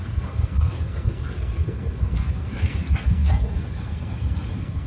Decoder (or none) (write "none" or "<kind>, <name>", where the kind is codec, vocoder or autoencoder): codec, SNAC